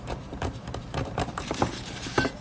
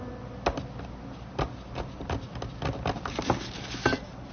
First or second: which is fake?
first